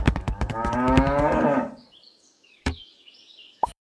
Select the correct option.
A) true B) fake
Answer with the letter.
B